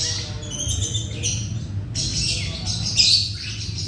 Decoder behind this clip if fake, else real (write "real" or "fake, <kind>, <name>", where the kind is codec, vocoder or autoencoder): real